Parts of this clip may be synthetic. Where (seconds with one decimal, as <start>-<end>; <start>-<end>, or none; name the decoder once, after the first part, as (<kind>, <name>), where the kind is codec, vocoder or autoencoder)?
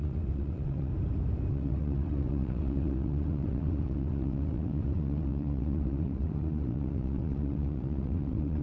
0.0-0.9 (vocoder, WaveNeXt); 1.5-8.6